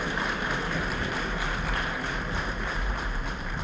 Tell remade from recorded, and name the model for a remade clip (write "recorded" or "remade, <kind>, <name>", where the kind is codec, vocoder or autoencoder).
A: remade, vocoder, BigVGAN v2